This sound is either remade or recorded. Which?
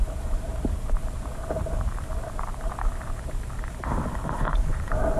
remade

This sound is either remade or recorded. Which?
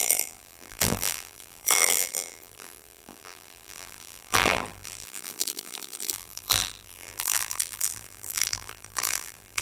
remade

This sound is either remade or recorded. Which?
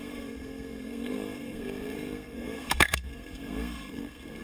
remade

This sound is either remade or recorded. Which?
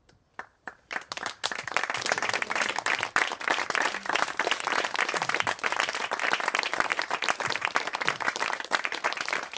remade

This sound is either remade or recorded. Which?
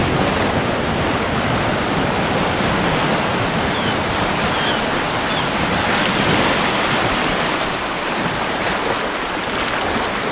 recorded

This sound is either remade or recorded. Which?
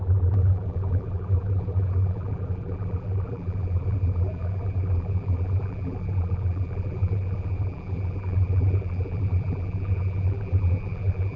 remade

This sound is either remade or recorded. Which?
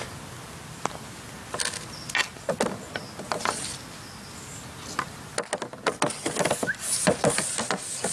recorded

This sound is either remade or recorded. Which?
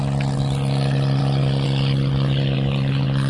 recorded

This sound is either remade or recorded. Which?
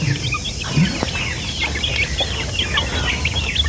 recorded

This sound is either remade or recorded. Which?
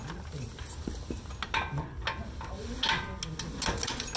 recorded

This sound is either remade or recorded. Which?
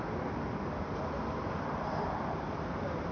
recorded